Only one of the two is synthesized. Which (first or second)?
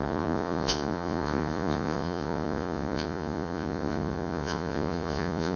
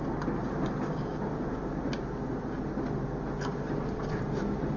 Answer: first